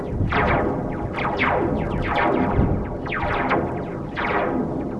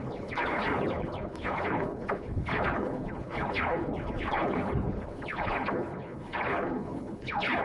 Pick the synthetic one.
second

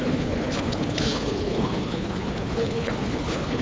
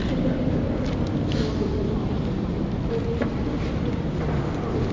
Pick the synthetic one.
first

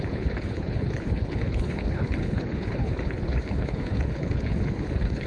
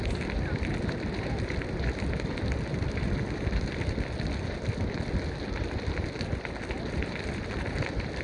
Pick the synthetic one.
first